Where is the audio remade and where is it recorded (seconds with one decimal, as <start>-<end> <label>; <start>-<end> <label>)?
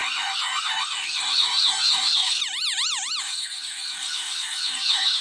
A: 0.0-2.4 remade; 2.4-3.2 recorded; 3.2-5.2 remade